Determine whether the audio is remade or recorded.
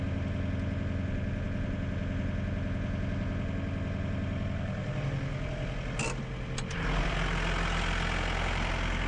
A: recorded